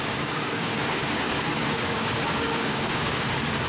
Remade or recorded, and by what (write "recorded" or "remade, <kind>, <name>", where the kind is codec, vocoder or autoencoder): remade, codec, DAC